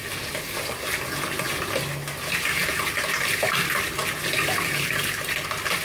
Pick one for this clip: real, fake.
real